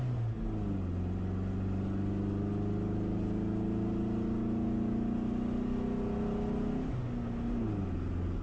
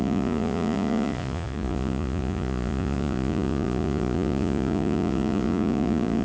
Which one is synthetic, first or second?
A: second